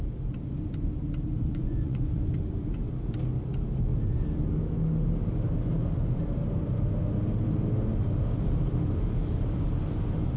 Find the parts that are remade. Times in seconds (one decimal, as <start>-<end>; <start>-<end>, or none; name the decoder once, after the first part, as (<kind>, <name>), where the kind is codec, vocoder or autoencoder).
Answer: 1.5-2.3 (vocoder, Vocos)